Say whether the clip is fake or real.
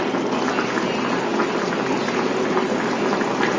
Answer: real